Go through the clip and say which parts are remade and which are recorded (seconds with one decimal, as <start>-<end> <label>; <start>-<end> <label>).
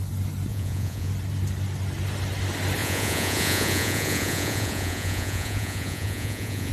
0.0-0.5 recorded; 0.5-1.1 remade; 1.1-2.8 recorded; 2.8-6.7 remade